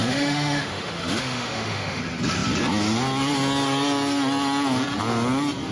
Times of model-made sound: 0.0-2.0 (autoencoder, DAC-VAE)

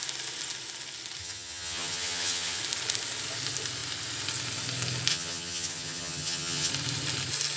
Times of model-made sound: 1.2-2.6 (vocoder, HiFi-GAN); 5.1-6.7